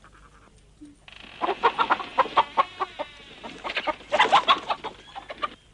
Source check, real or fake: real